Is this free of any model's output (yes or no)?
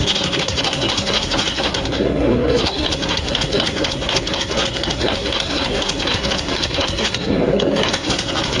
no